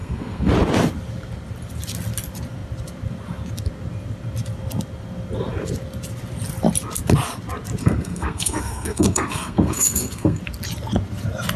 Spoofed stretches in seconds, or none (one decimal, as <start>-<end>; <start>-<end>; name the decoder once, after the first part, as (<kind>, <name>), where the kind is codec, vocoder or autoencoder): 0.0-0.5 (codec, SNAC); 7.8-10.4